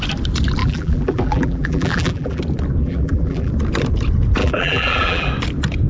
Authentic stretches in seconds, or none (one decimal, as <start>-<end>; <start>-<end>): 0.0-0.6; 2.4-2.8; 3.5-4.4; 5.3-5.9